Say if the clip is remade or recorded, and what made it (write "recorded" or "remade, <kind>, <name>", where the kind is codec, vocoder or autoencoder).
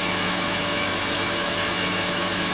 remade, autoencoder, DAC-VAE